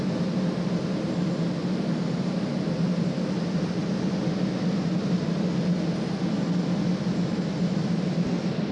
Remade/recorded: recorded